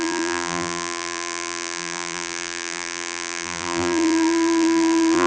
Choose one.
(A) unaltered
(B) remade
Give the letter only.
B